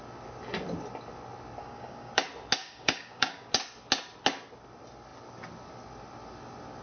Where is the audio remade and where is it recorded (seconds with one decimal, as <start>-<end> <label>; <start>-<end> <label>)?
0.0-1.6 recorded; 1.6-2.1 remade; 2.1-2.6 recorded; 2.6-3.5 remade; 3.5-6.8 recorded